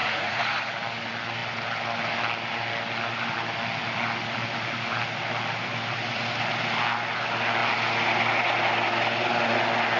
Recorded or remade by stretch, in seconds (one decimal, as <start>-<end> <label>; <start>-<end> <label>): 0.0-0.7 remade; 0.7-10.0 recorded